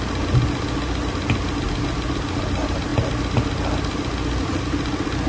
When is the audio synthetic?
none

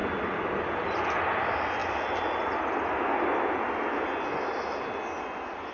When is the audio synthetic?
none

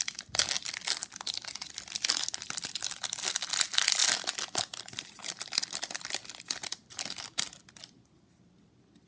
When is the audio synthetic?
none

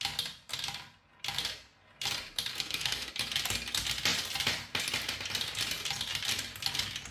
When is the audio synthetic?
2.5-3.1

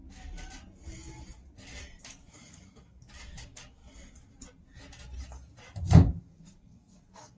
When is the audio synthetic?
2.0-3.8; 6.2-7.4

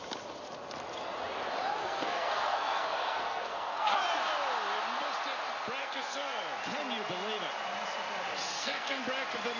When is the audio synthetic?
1.8-4.0; 5.8-6.4; 8.5-9.0

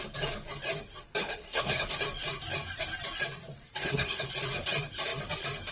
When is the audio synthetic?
1.2-1.9; 3.8-4.3

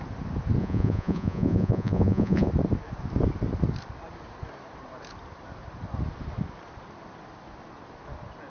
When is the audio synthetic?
0.6-2.5